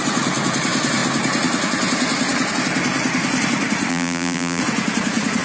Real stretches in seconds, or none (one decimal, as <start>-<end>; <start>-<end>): 0.0-3.9; 4.6-5.4